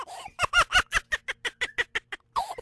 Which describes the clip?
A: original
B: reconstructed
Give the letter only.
A